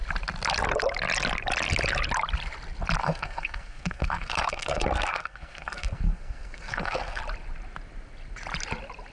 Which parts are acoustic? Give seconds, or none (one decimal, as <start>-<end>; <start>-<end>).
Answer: 0.0-3.0; 7.2-9.1